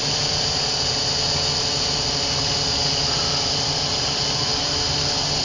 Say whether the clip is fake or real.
real